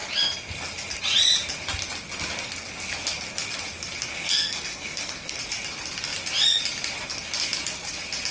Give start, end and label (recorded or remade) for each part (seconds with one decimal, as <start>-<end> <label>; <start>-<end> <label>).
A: 0.0-4.1 recorded; 4.1-5.4 remade; 5.4-8.3 recorded